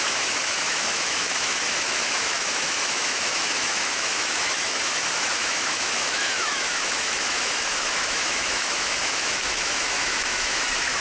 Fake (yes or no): yes